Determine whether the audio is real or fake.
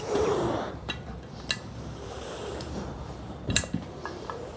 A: fake